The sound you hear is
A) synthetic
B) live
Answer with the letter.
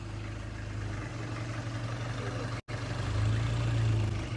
B